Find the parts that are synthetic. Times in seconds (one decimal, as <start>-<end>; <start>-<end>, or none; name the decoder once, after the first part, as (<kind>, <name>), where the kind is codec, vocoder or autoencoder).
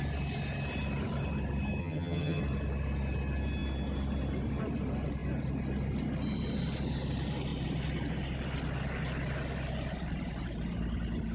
1.8-2.4 (vocoder, HiFi-GAN)